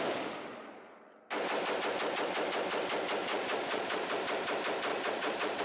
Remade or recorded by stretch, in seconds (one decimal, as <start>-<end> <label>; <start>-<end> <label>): 0.0-0.5 recorded; 0.5-1.3 remade; 1.3-3.3 recorded; 3.3-4.1 remade; 4.1-4.9 recorded; 4.9-5.6 remade